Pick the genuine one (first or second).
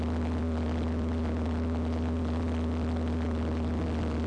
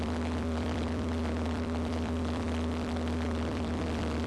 first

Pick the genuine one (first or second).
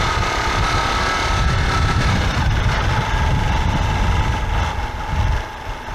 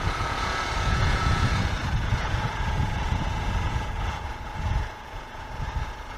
first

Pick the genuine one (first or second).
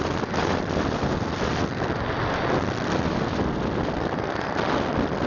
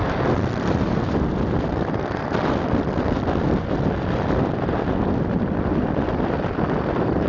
first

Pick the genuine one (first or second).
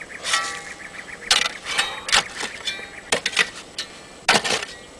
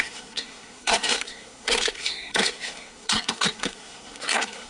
first